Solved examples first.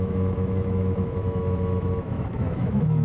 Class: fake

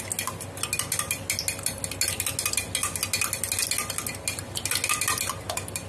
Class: real